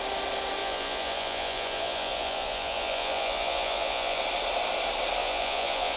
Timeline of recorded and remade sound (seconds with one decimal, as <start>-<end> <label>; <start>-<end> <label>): 0.0-0.6 recorded; 0.6-4.2 remade; 4.2-5.2 recorded; 5.2-6.0 remade